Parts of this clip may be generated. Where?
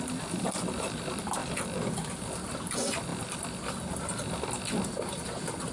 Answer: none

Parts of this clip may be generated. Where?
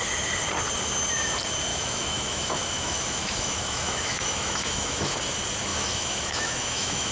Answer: 1.7-5.2 (autoencoder, DAC-VAE); 5.7-7.1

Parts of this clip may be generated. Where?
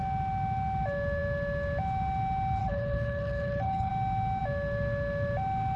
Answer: 2.6-3.9 (codec, HILCodec)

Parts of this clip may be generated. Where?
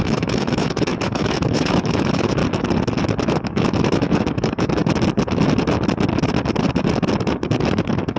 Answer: 0.0-2.4 (autoencoder, DAC-VAE); 3.2-4.8; 7.6-8.2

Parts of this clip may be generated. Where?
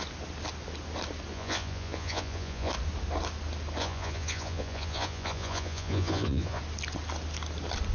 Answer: 1.3-2.7 (vocoder, Vocos); 3.8-6.6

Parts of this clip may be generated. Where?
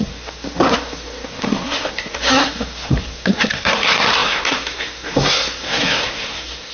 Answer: 0.0-6.7 (codec, SNAC)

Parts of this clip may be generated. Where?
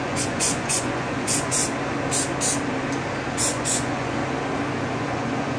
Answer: 0.0-1.6 (vocoder, Vocos); 3.3-4.2; 4.9-5.6